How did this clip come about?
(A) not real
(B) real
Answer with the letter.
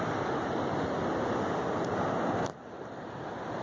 B